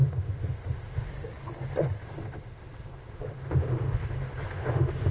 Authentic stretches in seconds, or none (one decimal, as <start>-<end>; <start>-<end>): 1.1-2.0

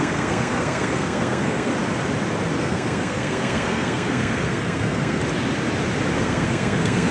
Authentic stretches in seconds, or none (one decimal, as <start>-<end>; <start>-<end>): 1.7-2.6; 5.2-6.2

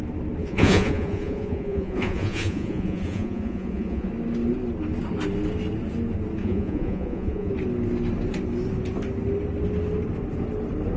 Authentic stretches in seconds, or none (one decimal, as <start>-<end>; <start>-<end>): 0.0-0.4; 4.1-6.4; 7.5-11.0

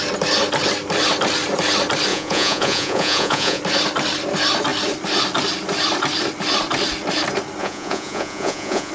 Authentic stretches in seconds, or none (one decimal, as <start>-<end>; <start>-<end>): 0.0-2.1; 3.6-7.6

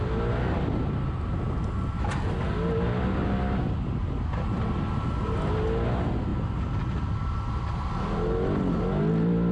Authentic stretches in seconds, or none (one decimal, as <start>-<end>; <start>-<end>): 0.0-9.5